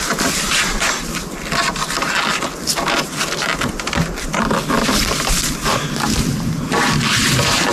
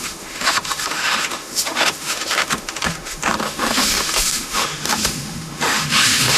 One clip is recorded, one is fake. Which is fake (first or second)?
second